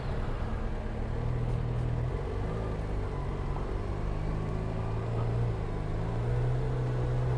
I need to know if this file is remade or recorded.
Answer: recorded